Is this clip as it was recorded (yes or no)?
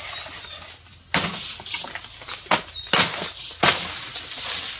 yes